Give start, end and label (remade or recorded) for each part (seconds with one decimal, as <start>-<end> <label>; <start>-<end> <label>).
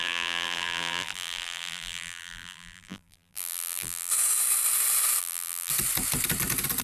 0.0-4.1 remade; 4.1-5.2 recorded; 5.2-5.7 remade; 5.7-6.8 recorded